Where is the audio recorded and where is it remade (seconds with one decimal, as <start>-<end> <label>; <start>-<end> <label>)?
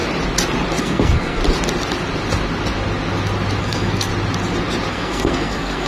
0.0-0.8 recorded; 0.8-1.4 remade; 1.4-3.6 recorded; 3.6-4.1 remade; 4.1-4.9 recorded; 4.9-5.9 remade